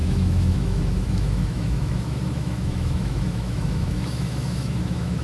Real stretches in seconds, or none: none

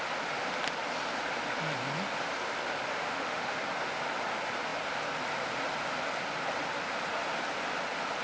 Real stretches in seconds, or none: 0.0-2.9; 3.6-8.2

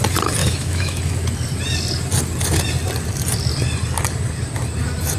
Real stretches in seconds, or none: 0.0-0.4; 1.0-5.2

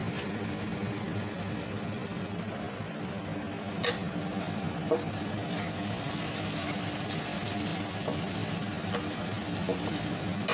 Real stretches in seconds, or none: 0.0-10.5

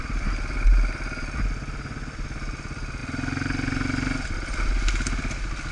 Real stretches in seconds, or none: 0.0-5.7

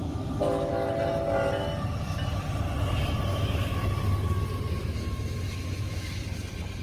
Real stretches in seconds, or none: 0.7-3.3; 3.9-4.8; 6.2-6.8

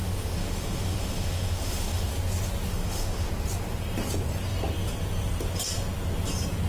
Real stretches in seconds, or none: 2.1-2.7; 3.3-6.7

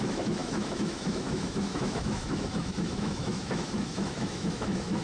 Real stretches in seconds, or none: none